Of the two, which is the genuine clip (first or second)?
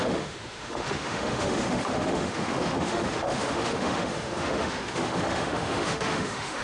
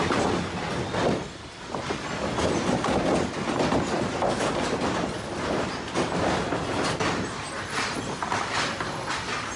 second